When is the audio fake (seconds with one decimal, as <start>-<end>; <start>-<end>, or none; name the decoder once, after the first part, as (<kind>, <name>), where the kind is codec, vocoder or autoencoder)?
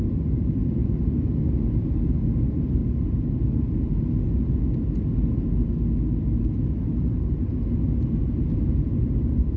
none